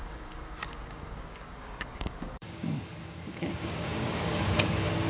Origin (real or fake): fake